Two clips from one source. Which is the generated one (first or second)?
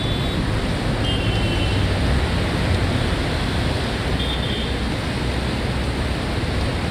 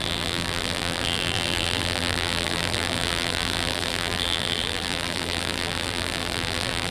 second